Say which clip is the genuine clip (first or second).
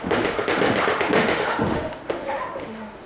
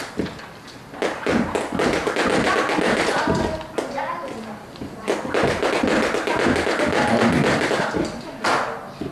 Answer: second